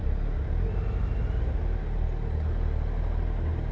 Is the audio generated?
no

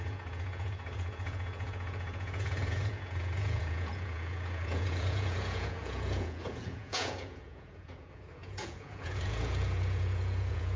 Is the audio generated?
yes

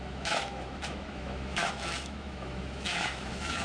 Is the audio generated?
yes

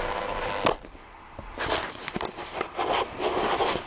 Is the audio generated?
no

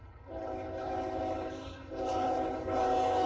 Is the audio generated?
yes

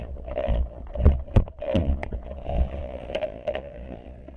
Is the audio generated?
yes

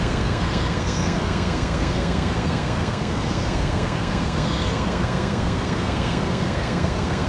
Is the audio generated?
yes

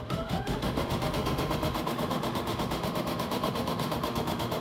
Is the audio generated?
yes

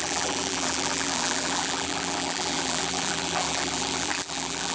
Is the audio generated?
yes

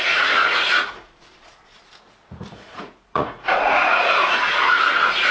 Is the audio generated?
yes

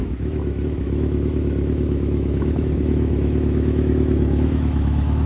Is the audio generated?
yes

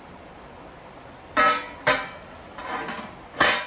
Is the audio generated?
no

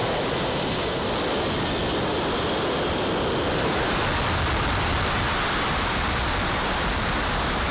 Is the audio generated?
no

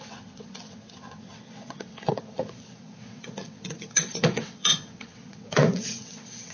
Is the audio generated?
yes